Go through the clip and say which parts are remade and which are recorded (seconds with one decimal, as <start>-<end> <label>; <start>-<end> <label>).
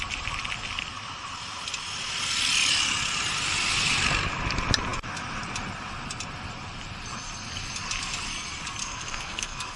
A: 0.0-8.8 recorded; 8.8-9.8 remade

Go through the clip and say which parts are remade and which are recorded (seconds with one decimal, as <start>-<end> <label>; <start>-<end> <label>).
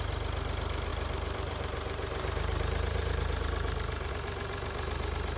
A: 0.0-0.9 recorded; 0.9-4.1 remade; 4.1-5.4 recorded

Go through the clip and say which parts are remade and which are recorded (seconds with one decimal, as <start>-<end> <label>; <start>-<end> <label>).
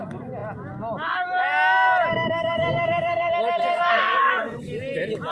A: 0.0-2.1 recorded; 2.1-3.3 remade; 3.3-3.7 recorded; 3.7-4.6 remade; 4.6-5.3 recorded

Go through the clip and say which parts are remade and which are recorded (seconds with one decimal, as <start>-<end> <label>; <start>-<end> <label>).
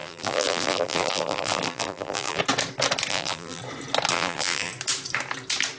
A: 0.0-2.4 remade; 2.4-3.1 recorded; 3.1-3.6 remade; 3.6-4.1 recorded; 4.1-4.7 remade; 4.7-5.8 recorded